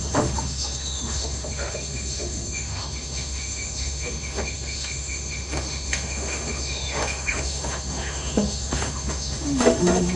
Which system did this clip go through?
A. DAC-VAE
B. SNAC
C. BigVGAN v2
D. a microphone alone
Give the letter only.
A